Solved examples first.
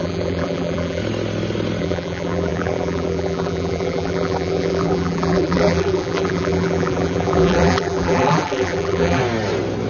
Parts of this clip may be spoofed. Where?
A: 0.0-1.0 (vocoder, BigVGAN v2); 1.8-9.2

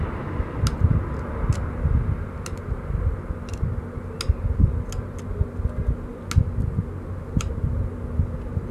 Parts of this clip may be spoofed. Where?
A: none